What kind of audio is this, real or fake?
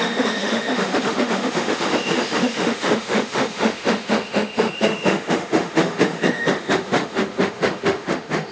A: fake